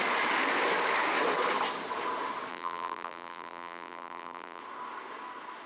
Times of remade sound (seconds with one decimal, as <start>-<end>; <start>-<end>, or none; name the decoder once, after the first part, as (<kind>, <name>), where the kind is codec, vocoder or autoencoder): 2.5-4.6 (vocoder, BigVGAN v2)